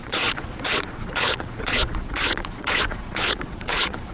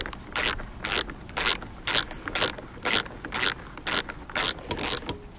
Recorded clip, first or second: second